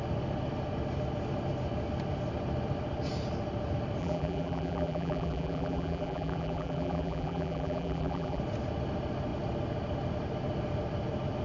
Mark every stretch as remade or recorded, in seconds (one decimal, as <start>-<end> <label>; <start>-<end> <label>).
0.0-4.0 recorded; 4.0-8.4 remade; 8.4-11.4 recorded